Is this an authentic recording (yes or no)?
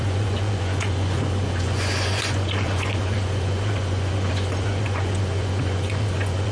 no